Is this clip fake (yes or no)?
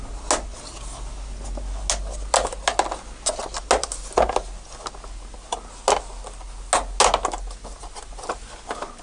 no